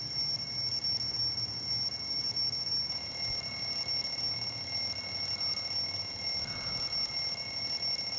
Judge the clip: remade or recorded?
recorded